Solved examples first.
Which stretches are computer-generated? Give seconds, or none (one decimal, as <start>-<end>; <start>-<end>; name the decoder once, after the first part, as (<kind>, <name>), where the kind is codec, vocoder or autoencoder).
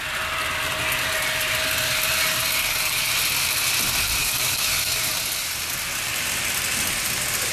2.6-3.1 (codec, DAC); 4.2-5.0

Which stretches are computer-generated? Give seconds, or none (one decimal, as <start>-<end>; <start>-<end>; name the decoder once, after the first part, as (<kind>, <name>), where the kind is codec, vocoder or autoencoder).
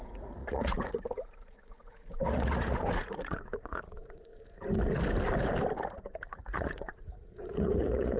0.0-4.3 (vocoder, Vocos); 6.0-8.2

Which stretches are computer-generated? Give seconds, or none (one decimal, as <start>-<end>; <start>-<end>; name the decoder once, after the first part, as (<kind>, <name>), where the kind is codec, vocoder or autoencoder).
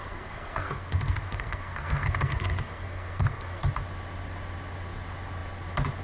0.0-3.6 (codec, SNAC)